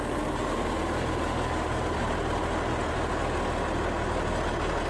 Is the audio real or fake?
real